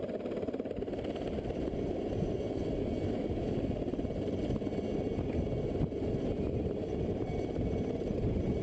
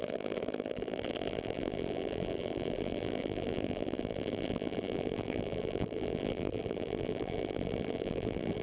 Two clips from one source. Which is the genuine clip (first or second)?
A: first